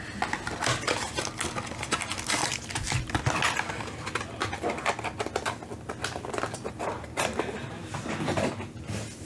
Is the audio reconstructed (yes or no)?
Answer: no